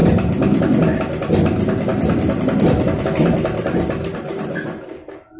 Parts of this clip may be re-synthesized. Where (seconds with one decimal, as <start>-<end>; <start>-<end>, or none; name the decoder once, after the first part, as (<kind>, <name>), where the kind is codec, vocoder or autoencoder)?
0.0-1.0 (vocoder, BigVGAN v2); 1.9-3.3